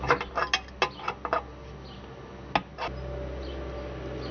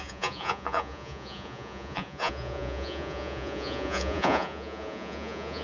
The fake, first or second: second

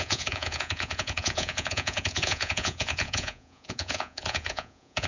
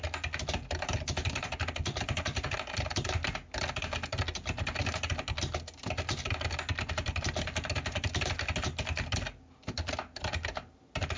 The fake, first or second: first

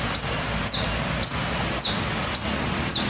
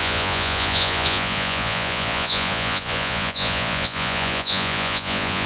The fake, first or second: second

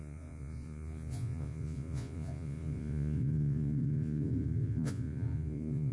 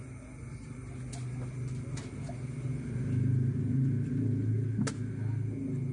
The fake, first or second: first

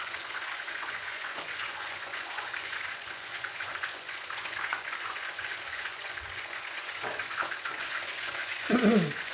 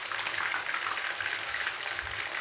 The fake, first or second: first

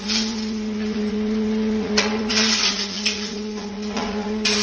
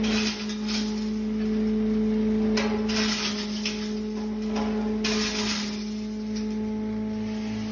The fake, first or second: first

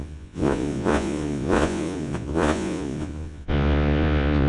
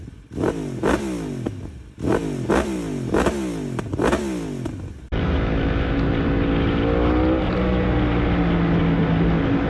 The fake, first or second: first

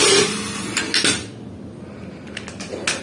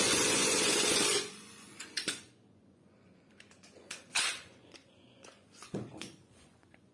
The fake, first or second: second